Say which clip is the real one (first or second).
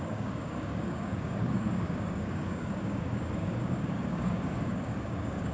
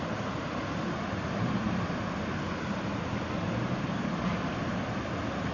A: second